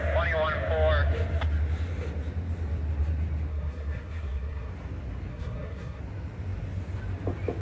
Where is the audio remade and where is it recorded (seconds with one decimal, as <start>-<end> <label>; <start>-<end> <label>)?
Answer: 0.0-3.5 recorded; 3.5-4.7 remade; 4.7-5.3 recorded; 5.3-6.0 remade; 6.0-7.6 recorded